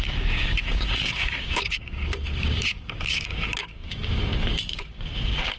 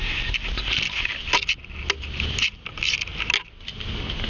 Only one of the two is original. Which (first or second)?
second